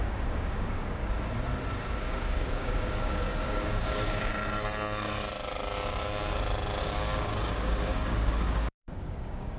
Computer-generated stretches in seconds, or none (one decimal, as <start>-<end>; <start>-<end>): 0.0-1.0; 2.0-4.3; 6.8-9.6